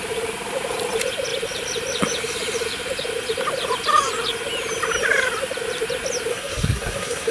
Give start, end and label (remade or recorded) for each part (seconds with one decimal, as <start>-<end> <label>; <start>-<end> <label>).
0.0-6.3 recorded; 6.3-7.3 remade